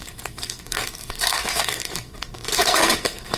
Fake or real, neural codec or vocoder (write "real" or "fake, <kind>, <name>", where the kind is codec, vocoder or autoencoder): fake, codec, SNAC